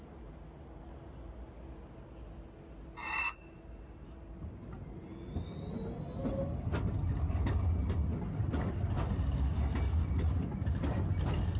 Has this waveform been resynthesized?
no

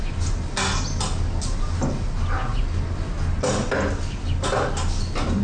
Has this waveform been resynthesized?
no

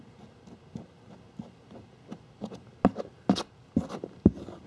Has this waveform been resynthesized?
no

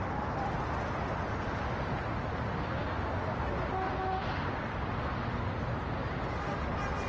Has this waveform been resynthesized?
no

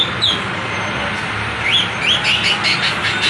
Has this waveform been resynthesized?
no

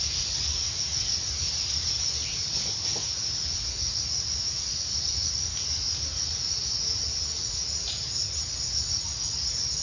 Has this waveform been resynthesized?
no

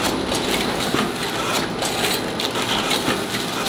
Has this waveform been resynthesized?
no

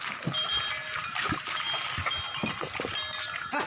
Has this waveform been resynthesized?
no